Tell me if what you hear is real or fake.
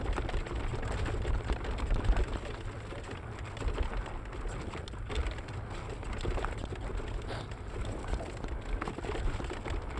real